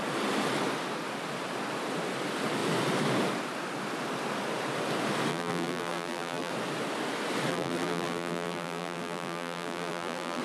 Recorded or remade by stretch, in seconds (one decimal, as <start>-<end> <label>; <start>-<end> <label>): 0.0-5.3 recorded; 5.3-6.5 remade; 6.5-7.5 recorded; 7.5-10.4 remade